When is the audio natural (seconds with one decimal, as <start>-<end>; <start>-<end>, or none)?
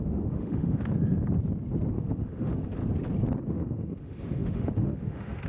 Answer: 0.9-1.9; 2.8-3.5